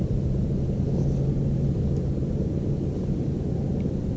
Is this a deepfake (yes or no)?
no